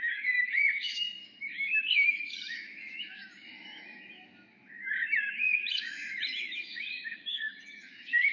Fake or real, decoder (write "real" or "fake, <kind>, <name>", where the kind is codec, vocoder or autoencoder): fake, autoencoder, DAC-VAE